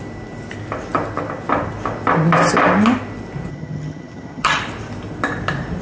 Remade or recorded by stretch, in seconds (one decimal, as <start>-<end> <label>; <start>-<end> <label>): 0.0-3.5 recorded; 3.5-4.6 remade; 4.6-5.8 recorded